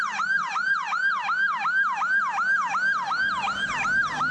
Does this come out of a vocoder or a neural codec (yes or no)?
no